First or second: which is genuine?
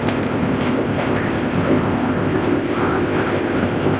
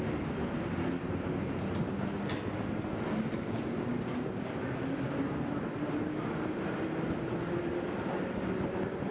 second